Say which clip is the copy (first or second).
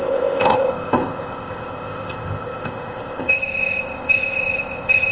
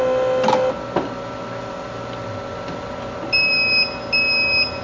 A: first